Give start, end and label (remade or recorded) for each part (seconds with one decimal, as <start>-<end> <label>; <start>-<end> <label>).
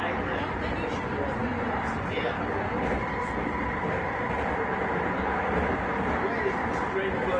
0.0-7.4 recorded